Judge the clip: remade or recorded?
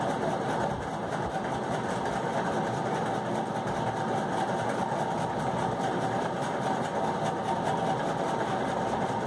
recorded